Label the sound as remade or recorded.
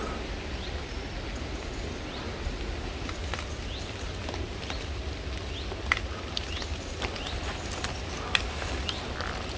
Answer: recorded